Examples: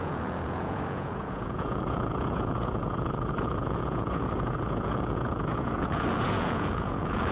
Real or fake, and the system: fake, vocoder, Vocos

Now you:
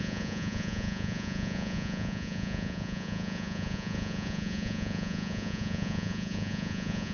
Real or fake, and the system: fake, vocoder, Vocos